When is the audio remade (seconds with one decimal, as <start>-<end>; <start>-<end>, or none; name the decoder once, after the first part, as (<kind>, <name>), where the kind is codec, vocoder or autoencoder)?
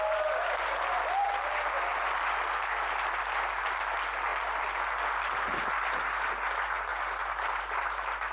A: none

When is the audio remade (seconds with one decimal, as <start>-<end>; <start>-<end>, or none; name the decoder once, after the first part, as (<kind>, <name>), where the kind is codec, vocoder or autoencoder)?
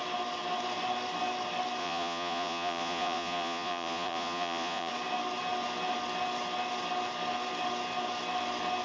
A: 1.8-4.9 (vocoder, Vocos)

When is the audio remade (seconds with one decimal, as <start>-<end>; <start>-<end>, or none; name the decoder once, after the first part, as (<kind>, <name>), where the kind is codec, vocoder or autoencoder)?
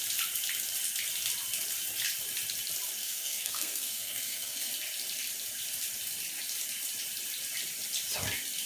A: 3.0-4.7 (codec, SNAC)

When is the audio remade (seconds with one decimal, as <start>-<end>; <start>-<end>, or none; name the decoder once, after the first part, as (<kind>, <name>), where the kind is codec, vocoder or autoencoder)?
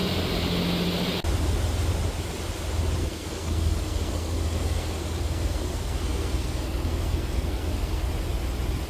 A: 3.0-8.1 (codec, SNAC)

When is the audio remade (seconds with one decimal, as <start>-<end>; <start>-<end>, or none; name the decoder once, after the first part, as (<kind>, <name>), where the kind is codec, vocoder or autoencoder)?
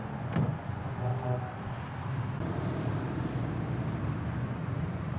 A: 0.0-1.1 (vocoder, Vocos); 4.2-5.2